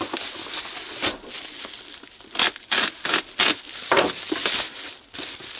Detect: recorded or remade recorded